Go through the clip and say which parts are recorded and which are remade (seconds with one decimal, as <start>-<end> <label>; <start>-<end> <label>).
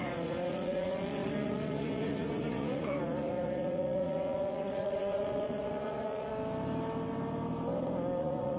0.0-6.3 remade; 6.3-8.2 recorded; 8.2-8.6 remade